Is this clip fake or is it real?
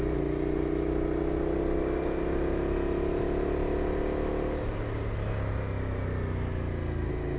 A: real